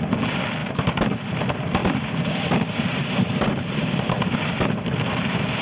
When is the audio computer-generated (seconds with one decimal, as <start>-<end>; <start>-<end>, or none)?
0.6-1.4; 1.8-5.6